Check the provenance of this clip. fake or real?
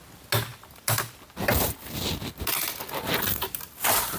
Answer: real